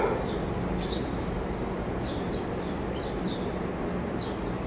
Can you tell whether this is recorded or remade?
recorded